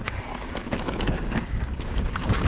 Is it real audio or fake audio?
fake